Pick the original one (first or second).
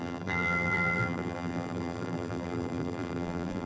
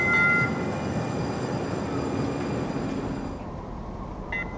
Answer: second